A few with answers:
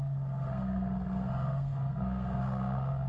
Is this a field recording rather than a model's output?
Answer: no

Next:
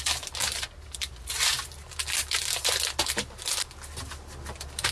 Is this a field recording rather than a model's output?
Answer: yes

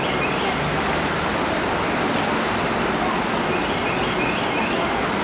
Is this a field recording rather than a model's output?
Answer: yes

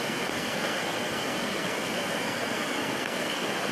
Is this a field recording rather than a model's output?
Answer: no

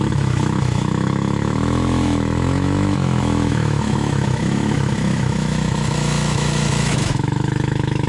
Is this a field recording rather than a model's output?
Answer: no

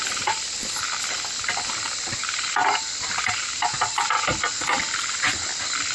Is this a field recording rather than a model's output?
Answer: yes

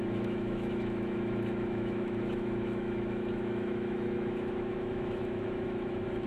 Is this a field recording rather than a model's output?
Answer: no